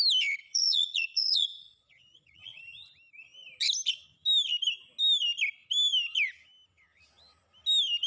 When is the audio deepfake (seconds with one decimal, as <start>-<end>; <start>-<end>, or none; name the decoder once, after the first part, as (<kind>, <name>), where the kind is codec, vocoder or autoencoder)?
0.4-2.6 (vocoder, Vocos)